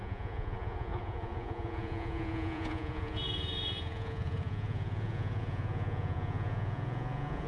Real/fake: fake